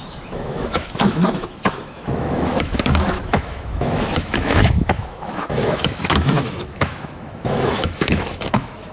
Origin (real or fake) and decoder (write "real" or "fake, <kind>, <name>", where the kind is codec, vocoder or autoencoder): fake, autoencoder, DAC-VAE